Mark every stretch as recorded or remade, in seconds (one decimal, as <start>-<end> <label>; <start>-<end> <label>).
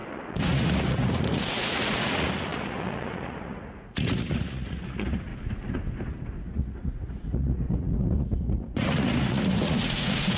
0.0-5.3 remade; 5.3-6.4 recorded; 6.4-10.4 remade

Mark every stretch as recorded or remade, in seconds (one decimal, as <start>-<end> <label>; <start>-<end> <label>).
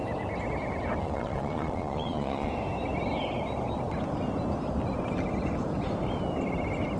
0.0-1.0 recorded; 1.0-2.5 remade; 2.5-7.0 recorded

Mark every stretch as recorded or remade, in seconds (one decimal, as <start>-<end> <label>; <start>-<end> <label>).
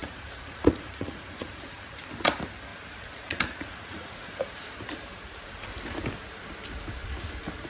0.0-2.0 remade; 2.0-2.7 recorded; 2.7-4.3 remade; 4.3-5.1 recorded; 5.1-5.7 remade; 5.7-7.7 recorded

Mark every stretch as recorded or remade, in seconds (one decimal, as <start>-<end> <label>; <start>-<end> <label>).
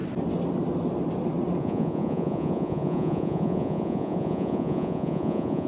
0.0-1.6 recorded; 1.6-5.7 remade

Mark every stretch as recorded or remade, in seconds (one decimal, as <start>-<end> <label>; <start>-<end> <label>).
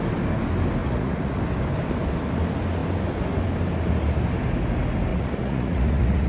0.0-0.8 recorded; 0.8-1.4 remade; 1.4-5.1 recorded; 5.1-6.3 remade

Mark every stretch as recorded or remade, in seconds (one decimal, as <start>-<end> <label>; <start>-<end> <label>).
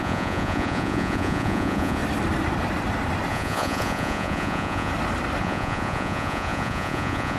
0.0-2.0 remade; 2.0-3.3 recorded; 3.3-4.9 remade; 4.9-5.4 recorded; 5.4-7.4 remade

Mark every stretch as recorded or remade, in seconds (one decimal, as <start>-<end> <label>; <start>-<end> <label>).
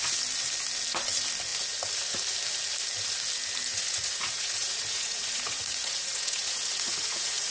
0.0-3.7 recorded; 3.7-7.5 remade